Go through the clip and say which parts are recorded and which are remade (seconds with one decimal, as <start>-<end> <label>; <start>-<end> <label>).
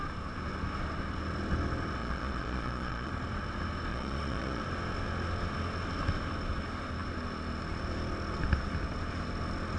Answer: 0.0-2.0 recorded; 2.0-3.1 remade; 3.1-3.9 recorded; 3.9-4.6 remade; 4.6-9.8 recorded